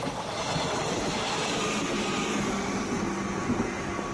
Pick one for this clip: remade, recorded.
recorded